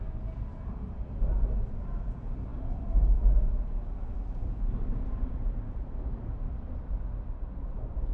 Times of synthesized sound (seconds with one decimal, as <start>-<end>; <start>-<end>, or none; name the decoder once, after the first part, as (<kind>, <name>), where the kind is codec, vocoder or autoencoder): none